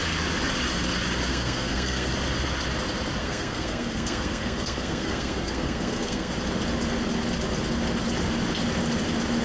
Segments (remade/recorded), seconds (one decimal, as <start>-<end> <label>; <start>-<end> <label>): 0.0-1.3 recorded; 1.3-2.1 remade; 2.1-3.2 recorded; 3.2-6.3 remade; 6.3-9.4 recorded